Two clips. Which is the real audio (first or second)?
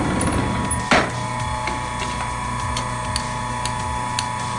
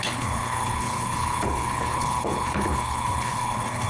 first